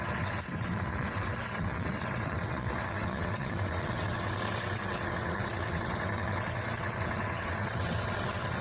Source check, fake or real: fake